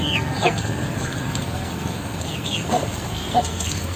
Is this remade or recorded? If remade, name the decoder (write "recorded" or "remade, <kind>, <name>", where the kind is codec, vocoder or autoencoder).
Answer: remade, codec, SNAC